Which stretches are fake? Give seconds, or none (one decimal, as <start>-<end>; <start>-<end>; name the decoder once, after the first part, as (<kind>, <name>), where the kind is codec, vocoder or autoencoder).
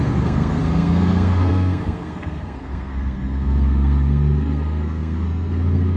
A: 0.0-6.0 (codec, SNAC)